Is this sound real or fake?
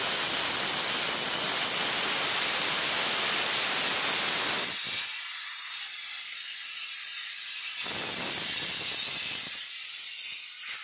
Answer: real